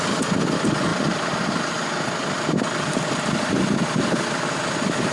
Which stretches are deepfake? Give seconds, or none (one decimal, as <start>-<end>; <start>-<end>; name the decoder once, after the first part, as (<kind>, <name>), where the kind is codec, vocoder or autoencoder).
none